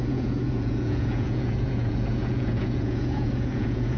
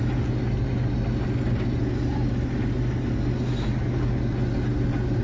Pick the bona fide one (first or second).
second